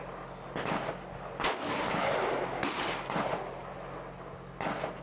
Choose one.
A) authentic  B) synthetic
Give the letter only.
A